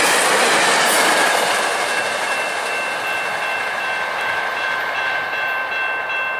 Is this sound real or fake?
real